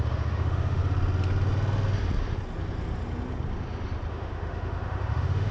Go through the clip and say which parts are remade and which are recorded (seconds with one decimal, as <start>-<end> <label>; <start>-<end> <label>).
0.0-0.8 remade; 0.8-4.1 recorded; 4.1-5.5 remade